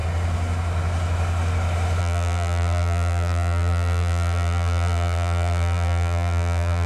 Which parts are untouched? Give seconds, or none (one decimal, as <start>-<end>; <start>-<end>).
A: 0.0-2.0